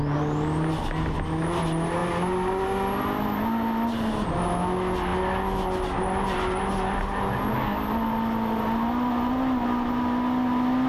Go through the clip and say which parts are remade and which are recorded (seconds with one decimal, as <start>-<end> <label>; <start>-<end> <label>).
0.0-10.9 recorded